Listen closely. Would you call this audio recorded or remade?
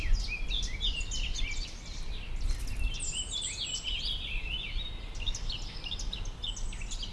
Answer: recorded